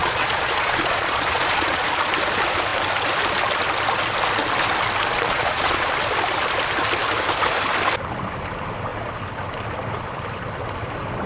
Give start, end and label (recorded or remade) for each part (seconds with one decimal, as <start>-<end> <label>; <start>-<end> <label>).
0.0-1.8 remade; 1.8-5.1 recorded; 5.1-5.9 remade; 5.9-11.3 recorded